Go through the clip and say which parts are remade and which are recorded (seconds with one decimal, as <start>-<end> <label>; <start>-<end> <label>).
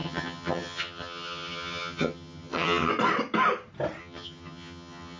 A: 0.0-2.9 remade; 2.9-4.0 recorded; 4.0-5.2 remade